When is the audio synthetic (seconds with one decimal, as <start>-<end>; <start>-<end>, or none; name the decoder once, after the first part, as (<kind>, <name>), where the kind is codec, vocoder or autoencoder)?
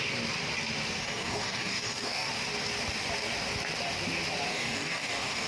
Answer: 1.0-2.3 (codec, DAC); 4.5-5.5